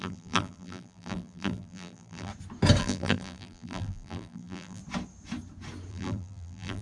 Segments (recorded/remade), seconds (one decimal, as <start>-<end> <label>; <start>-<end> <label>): 0.0-2.3 remade; 2.3-2.8 recorded; 2.8-4.8 remade; 4.8-5.9 recorded; 5.9-6.8 remade